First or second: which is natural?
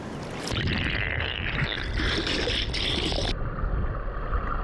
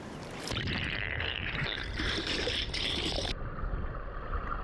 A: first